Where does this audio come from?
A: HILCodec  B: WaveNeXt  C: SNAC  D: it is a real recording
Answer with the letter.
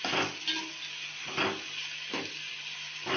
D